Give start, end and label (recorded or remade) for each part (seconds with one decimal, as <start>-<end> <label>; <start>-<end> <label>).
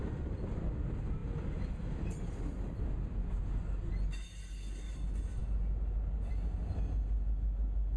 0.0-8.0 recorded